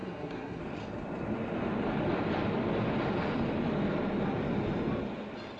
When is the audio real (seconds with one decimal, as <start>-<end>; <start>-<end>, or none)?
0.6-5.6